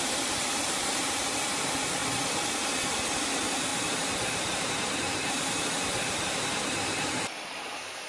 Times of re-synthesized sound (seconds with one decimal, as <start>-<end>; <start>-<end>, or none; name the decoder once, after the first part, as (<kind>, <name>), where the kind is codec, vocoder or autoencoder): 0.0-2.0 (vocoder, BigVGAN v2); 3.3-8.1